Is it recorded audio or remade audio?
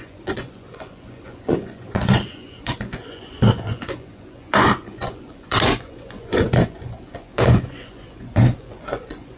remade